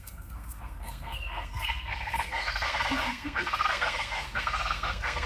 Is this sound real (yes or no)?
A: no